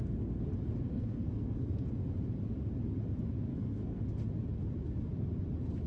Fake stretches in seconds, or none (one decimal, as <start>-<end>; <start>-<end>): 0.9-1.9; 3.5-4.0